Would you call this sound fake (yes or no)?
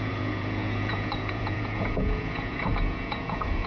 yes